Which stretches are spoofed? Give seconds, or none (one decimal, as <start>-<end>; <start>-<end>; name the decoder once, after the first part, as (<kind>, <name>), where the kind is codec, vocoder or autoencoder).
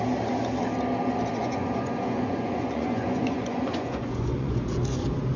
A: 1.4-4.6 (vocoder, Vocos)